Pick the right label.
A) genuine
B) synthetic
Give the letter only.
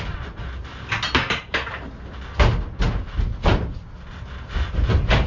A